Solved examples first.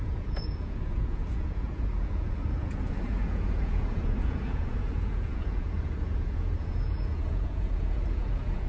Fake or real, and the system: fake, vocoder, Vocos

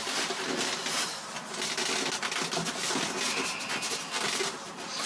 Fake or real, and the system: real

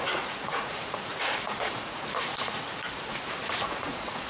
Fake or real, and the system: fake, vocoder, Vocos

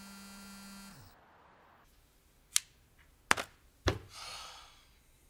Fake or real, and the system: real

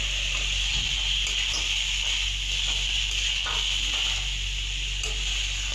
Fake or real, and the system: real